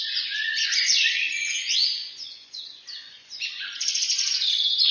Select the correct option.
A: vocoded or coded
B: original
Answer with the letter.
A